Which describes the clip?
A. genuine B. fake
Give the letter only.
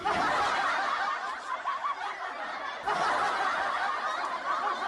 A